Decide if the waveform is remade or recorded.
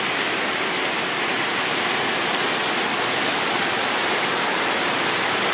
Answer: recorded